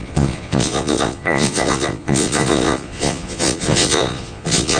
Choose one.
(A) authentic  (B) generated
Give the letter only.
B